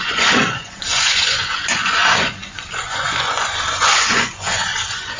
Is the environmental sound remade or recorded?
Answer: remade